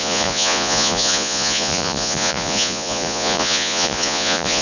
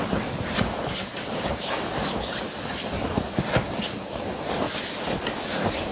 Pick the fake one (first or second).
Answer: first